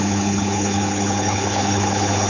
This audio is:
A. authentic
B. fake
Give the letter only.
B